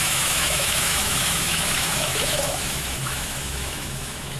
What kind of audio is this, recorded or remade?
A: remade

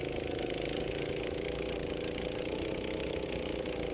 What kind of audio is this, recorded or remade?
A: recorded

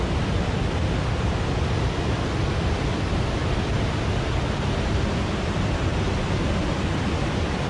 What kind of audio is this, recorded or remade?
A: recorded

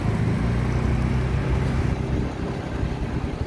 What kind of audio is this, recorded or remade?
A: recorded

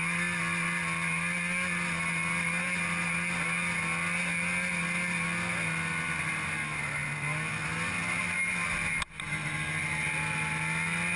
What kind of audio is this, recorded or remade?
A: recorded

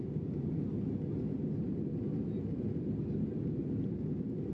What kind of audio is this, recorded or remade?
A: recorded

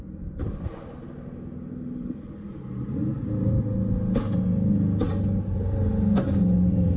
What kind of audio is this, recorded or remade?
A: recorded